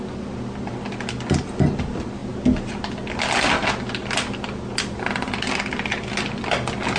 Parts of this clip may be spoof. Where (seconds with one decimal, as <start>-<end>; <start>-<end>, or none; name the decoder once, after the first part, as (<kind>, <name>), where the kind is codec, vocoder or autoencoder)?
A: none